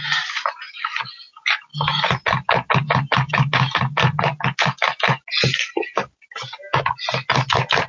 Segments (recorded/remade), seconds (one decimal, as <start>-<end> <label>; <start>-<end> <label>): 0.0-7.9 recorded